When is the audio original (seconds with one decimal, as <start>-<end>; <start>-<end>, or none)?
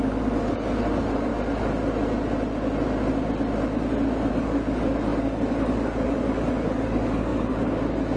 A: 1.3-4.3